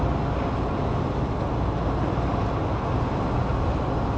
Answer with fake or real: real